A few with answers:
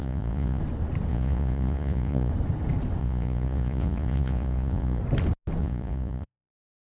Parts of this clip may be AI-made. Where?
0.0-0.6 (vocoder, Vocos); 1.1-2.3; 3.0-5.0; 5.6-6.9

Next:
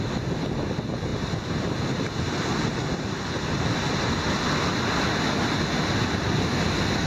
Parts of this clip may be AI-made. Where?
none

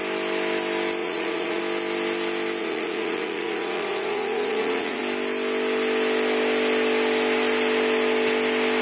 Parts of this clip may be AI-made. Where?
1.0-1.6 (vocoder, Vocos); 2.6-5.0

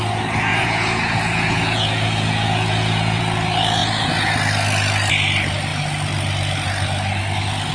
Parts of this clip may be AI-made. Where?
0.5-3.2 (vocoder, Vocos); 3.8-4.3

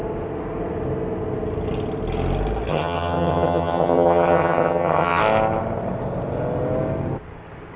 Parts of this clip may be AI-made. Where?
2.7-5.2 (vocoder, HiFi-GAN)